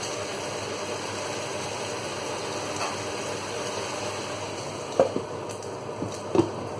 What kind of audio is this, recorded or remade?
recorded